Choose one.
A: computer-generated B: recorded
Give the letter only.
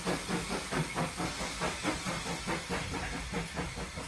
B